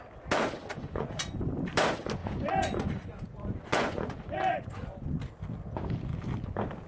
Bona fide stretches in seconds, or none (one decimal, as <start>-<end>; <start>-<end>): 0.0-0.7; 1.4-2.2; 5.1-6.9